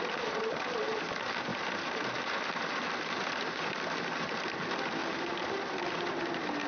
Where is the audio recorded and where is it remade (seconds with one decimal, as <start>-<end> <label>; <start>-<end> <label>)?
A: 0.0-6.7 recorded